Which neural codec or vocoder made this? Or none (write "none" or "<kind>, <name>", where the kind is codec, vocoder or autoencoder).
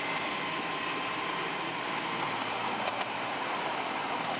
vocoder, BigVGAN v2